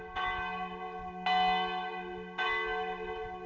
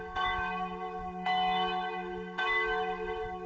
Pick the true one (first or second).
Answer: first